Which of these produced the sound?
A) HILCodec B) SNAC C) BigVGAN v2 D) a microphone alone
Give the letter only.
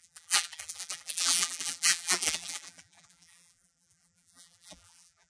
C